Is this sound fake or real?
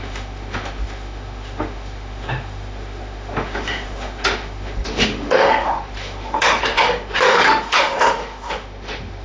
fake